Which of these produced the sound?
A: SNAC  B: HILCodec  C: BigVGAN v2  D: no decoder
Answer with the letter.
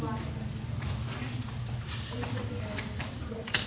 D